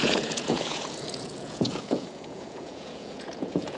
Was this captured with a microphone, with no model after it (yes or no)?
no